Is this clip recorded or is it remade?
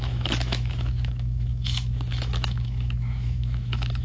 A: remade